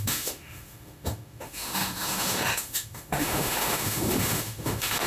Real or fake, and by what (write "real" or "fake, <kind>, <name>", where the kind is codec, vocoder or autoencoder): fake, autoencoder, DAC-VAE